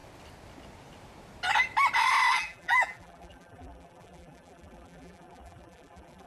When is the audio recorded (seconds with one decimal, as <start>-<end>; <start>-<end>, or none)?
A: 0.0-2.3